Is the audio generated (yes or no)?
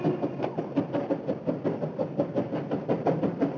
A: no